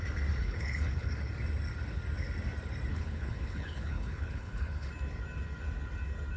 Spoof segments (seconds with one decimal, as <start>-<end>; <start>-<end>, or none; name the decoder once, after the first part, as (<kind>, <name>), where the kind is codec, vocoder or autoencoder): 0.4-1.1 (codec, HILCodec); 2.9-4.9